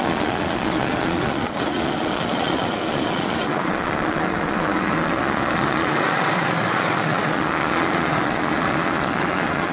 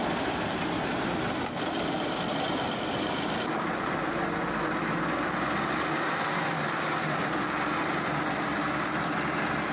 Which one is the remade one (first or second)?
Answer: first